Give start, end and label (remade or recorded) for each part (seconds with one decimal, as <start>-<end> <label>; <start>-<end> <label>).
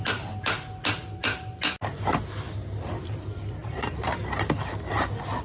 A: 0.0-3.6 recorded; 3.6-4.9 remade; 4.9-5.4 recorded